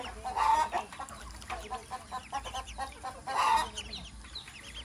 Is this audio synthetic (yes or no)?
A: no